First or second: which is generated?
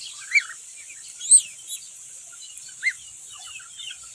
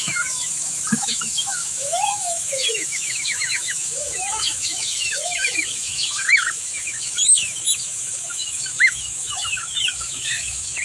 second